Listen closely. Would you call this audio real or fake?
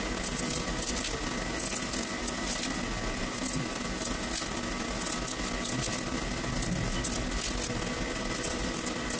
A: real